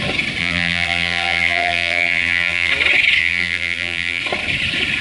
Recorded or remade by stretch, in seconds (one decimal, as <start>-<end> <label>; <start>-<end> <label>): 0.0-0.4 recorded; 0.4-2.7 remade; 2.7-3.2 recorded; 3.2-4.2 remade; 4.2-5.0 recorded